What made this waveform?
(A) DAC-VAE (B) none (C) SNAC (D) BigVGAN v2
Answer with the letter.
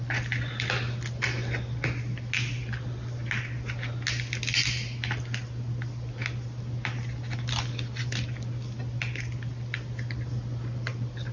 B